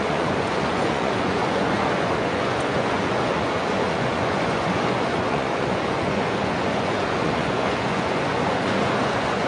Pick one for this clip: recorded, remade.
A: remade